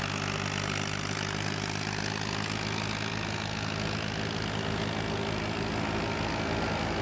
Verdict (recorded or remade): recorded